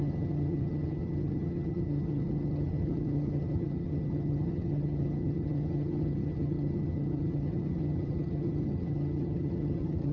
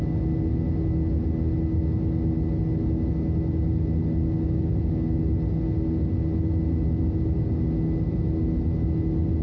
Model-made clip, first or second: first